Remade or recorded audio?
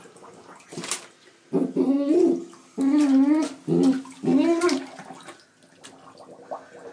recorded